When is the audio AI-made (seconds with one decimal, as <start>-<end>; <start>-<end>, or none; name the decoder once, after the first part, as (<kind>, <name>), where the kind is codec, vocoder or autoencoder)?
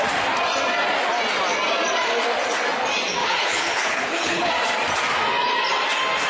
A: 3.2-4.5 (codec, HILCodec)